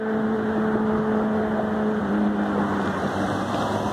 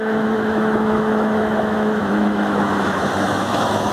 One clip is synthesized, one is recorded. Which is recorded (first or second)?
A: first